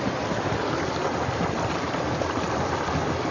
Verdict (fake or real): real